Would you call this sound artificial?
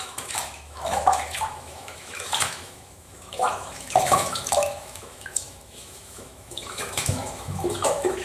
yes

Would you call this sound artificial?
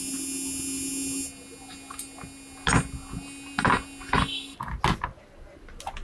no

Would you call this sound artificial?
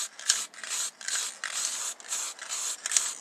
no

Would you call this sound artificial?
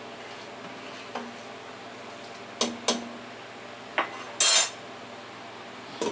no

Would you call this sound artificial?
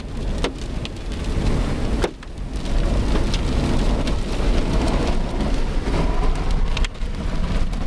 no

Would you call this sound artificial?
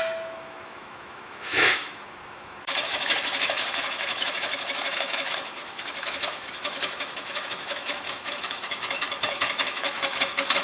yes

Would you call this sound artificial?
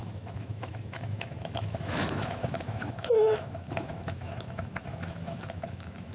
yes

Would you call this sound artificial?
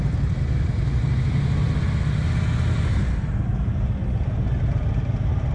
no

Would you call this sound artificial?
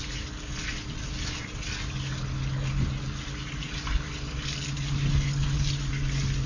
no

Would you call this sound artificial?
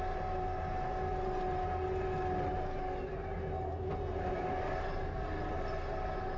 no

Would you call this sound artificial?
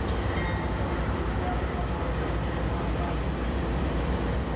no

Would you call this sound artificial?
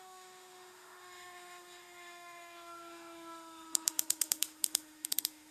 yes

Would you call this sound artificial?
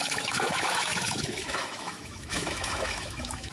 yes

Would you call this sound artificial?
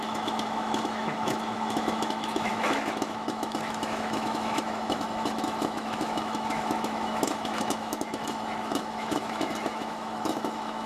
yes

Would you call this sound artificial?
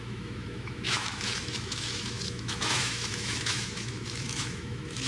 yes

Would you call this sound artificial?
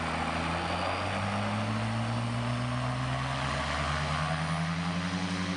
no